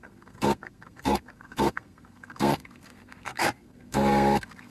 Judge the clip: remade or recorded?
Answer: remade